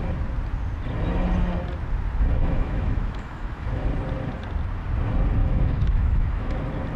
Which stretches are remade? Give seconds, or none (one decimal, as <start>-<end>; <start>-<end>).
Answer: 2.4-3.8; 5.4-6.5